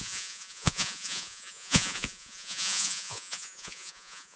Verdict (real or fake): fake